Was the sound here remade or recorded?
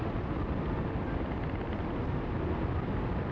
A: recorded